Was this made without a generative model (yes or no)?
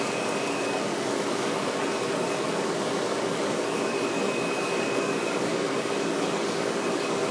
no